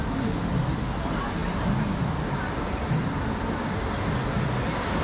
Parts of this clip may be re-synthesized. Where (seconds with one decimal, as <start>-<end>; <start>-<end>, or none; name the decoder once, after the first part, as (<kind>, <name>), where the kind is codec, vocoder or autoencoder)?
none

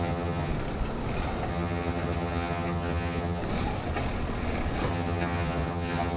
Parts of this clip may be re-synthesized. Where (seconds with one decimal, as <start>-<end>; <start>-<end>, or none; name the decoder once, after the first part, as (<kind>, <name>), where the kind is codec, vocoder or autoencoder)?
0.0-0.5 (vocoder, HiFi-GAN); 1.5-3.4; 4.9-6.2

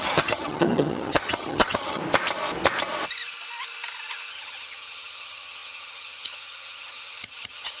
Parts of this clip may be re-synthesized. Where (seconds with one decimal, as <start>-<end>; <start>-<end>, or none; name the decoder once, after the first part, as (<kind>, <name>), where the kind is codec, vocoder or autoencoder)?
0.0-2.0 (vocoder, HiFi-GAN); 4.3-7.8

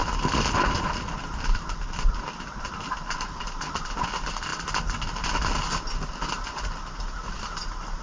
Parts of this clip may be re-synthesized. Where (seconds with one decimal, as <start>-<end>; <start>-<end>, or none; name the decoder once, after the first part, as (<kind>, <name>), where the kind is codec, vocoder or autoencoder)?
none

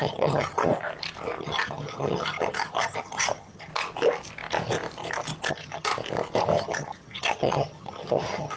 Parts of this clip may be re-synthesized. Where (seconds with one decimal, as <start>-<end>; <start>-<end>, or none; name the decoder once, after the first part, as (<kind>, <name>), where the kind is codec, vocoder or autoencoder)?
0.0-0.7 (vocoder, HiFi-GAN); 1.4-3.7; 5.5-5.9; 6.6-8.6

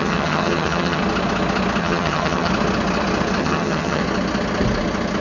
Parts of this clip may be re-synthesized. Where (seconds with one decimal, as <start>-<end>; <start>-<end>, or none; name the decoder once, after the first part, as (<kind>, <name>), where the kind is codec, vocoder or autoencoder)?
0.0-1.0 (vocoder, HiFi-GAN); 1.8-2.5; 3.4-4.0